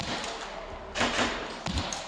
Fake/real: real